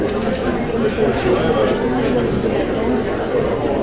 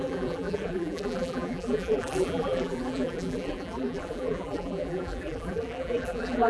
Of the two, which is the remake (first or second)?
second